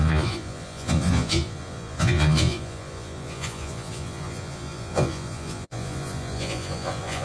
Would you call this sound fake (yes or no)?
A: yes